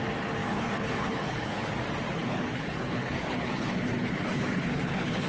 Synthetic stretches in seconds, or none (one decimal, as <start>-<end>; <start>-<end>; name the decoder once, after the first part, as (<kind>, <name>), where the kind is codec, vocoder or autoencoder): 0.4-1.7 (codec, HILCodec); 2.1-5.3